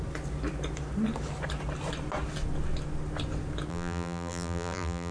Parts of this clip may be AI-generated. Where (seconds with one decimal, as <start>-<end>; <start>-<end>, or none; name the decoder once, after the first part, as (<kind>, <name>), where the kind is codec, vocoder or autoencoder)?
3.7-5.1 (vocoder, BigVGAN v2)